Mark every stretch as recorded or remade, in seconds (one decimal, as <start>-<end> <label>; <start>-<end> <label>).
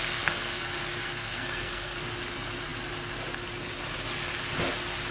0.0-2.0 remade; 2.0-5.1 recorded